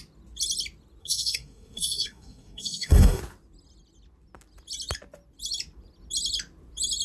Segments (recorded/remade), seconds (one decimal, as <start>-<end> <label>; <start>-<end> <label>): 0.0-1.0 recorded; 1.0-3.2 remade; 3.2-7.0 recorded